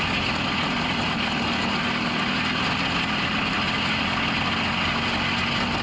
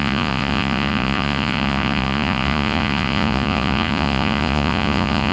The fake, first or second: second